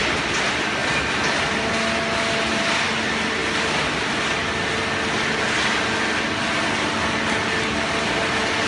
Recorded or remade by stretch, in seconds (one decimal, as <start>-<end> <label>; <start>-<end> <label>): 0.0-8.7 recorded